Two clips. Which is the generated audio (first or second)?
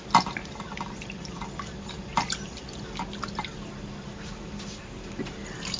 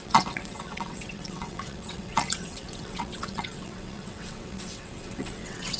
second